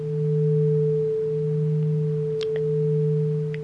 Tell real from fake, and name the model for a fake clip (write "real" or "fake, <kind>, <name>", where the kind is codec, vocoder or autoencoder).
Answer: real